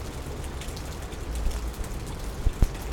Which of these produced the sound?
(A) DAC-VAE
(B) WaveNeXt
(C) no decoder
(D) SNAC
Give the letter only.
C